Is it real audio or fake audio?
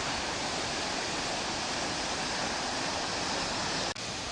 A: real